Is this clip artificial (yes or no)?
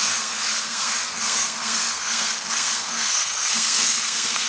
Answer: yes